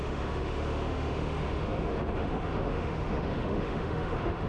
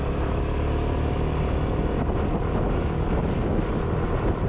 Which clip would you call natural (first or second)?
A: second